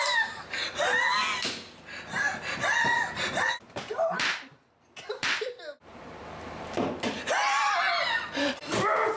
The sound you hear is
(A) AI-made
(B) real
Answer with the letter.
A